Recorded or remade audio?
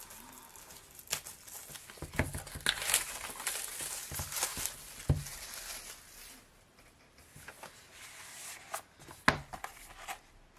recorded